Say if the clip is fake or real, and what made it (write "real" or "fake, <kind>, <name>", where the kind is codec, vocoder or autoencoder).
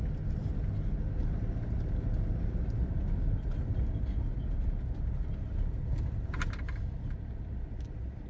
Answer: real